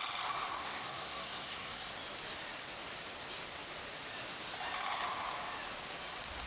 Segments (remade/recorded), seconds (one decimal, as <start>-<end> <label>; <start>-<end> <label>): 0.0-0.6 recorded; 0.6-1.9 remade; 1.9-6.5 recorded